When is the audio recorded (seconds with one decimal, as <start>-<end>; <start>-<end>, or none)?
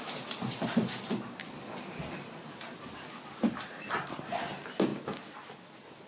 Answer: 0.0-6.1